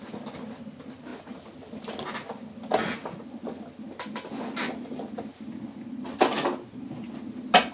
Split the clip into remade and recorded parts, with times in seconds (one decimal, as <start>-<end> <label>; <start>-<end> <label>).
0.0-7.7 recorded